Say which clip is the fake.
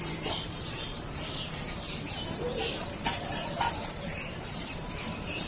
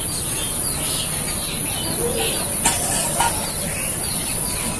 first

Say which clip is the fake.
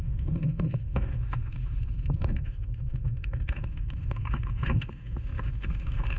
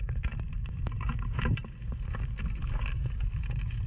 first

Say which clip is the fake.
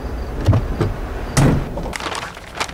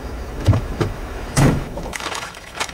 second